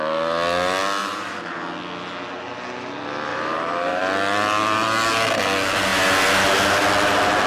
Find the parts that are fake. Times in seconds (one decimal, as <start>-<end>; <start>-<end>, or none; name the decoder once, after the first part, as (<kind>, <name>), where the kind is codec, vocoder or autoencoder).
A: 1.0-1.6 (vocoder, BigVGAN v2); 3.3-4.0